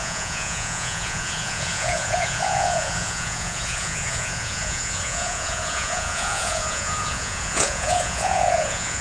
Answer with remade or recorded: remade